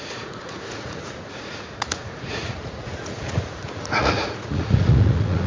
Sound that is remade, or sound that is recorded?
remade